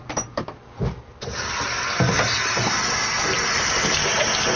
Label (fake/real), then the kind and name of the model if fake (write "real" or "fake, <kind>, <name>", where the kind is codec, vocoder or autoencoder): real